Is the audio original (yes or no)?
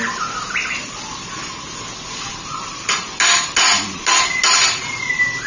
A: yes